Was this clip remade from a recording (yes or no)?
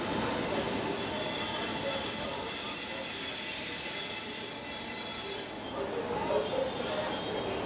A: no